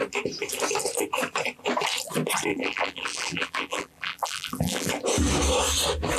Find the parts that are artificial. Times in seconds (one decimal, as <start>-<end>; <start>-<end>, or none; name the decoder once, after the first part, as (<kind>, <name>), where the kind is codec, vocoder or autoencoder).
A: 2.5-4.9 (vocoder, BigVGAN v2)